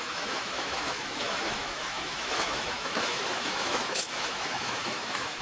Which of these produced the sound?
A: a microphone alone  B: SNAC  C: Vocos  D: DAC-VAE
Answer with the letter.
D